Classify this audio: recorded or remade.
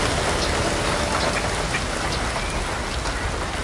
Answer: recorded